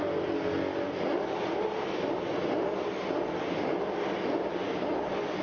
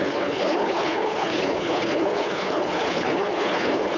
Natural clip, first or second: first